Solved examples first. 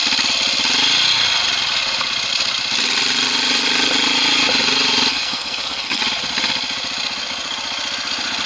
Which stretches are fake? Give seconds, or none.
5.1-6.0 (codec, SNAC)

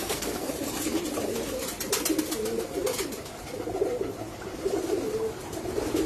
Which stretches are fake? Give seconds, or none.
0.0-0.5 (codec, SNAC)